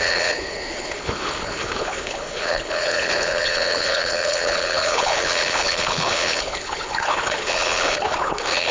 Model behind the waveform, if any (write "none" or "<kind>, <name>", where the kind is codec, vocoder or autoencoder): codec, HILCodec